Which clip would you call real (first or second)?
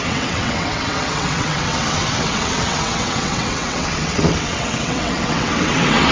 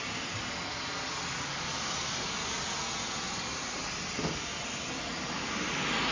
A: second